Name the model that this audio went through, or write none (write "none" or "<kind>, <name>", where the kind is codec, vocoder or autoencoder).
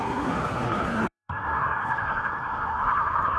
codec, SNAC